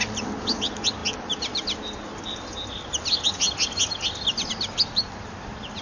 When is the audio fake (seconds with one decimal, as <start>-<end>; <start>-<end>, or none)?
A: none